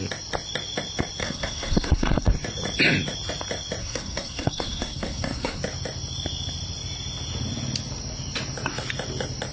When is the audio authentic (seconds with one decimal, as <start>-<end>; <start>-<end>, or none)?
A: 0.0-1.2; 2.3-3.8; 5.6-9.5